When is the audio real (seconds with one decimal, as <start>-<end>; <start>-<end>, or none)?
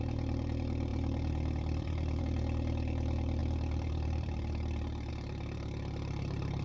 none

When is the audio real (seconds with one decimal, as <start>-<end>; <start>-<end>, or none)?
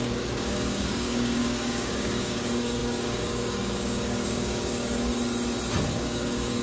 5.1-5.9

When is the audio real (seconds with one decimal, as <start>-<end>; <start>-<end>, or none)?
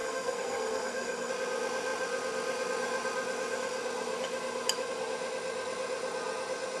1.3-6.8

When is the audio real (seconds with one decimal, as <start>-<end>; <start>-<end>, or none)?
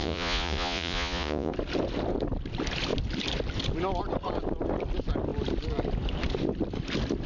1.5-7.3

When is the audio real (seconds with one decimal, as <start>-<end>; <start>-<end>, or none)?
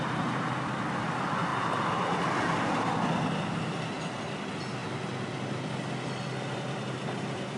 1.5-4.2; 4.8-6.5